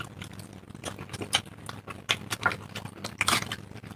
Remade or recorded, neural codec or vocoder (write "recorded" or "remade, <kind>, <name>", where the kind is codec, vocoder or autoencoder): recorded